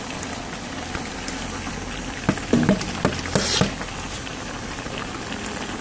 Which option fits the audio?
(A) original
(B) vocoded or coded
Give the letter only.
A